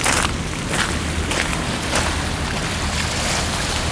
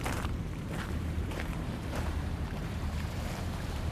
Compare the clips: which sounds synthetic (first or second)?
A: second